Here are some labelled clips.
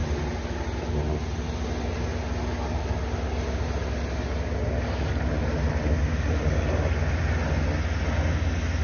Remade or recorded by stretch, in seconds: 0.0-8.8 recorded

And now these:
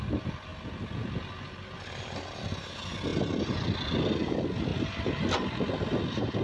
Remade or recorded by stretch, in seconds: 0.0-6.4 recorded